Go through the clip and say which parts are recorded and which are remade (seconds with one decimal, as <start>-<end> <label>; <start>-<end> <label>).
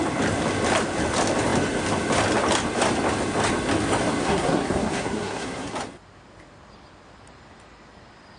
0.0-4.2 recorded; 4.2-5.7 remade; 5.7-8.4 recorded